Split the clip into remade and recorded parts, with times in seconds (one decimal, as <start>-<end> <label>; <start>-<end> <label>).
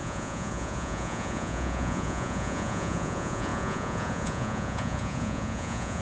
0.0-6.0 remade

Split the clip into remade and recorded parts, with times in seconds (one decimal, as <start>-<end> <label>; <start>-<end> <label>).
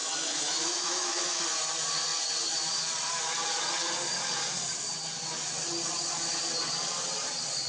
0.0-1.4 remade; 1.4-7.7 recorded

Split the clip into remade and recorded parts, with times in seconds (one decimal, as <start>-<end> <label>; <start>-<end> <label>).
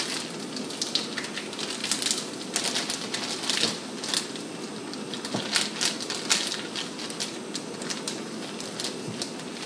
0.0-9.7 recorded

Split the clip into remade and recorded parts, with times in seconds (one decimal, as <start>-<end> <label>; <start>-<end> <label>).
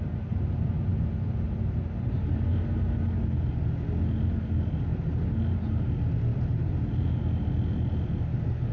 0.0-6.3 recorded; 6.3-7.2 remade; 7.2-8.7 recorded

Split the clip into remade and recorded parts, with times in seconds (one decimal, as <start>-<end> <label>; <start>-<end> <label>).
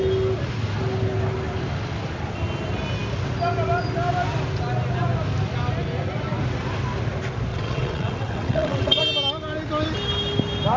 0.0-7.5 recorded; 7.5-9.0 remade; 9.0-10.8 recorded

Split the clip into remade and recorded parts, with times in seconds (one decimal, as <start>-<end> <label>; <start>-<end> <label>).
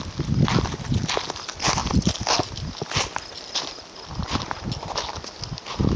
0.0-6.0 recorded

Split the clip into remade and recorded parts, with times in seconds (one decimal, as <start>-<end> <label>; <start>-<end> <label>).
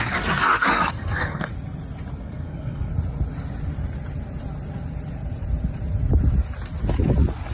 0.0-1.5 remade; 1.5-2.2 recorded; 2.2-2.9 remade; 2.9-7.5 recorded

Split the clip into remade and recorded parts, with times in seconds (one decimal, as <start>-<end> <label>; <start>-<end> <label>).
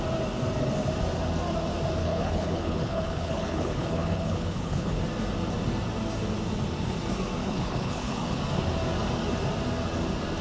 0.0-2.0 recorded; 2.0-5.0 remade; 5.0-7.4 recorded; 7.4-8.4 remade; 8.4-10.4 recorded